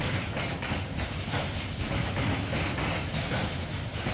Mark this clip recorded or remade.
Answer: recorded